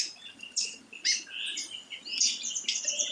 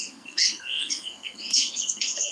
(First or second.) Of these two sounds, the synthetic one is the second